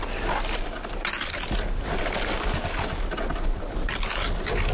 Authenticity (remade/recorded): recorded